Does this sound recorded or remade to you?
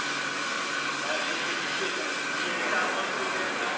recorded